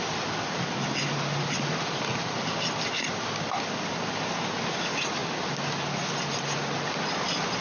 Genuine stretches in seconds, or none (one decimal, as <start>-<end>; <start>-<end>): 0.0-7.6